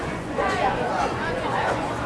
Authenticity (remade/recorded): remade